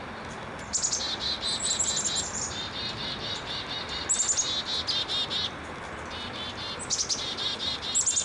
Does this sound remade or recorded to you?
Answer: recorded